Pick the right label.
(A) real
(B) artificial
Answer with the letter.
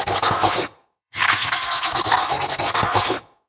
B